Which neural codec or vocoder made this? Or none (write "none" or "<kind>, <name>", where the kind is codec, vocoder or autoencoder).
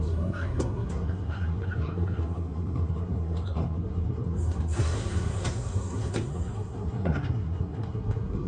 codec, SNAC